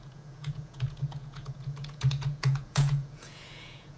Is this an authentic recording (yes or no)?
no